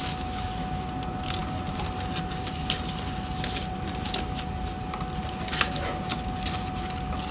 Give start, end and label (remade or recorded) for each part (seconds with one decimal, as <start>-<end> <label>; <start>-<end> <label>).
0.0-7.3 recorded